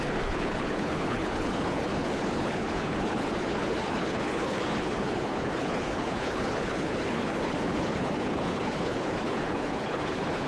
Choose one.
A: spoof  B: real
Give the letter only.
A